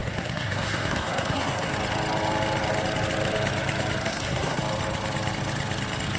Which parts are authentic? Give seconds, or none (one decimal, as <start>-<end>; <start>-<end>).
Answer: 1.7-4.0; 4.6-6.2